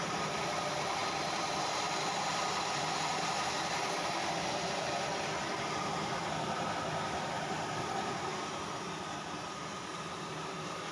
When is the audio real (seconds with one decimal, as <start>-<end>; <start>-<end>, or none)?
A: 0.0-10.9